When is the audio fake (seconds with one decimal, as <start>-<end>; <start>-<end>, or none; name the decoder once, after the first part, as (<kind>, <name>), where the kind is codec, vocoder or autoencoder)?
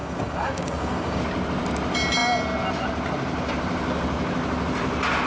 0.0-1.2 (codec, DAC)